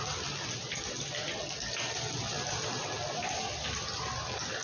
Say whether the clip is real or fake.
real